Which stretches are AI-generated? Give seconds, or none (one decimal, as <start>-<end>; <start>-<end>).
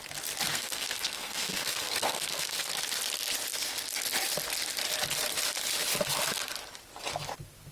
0.5-2.7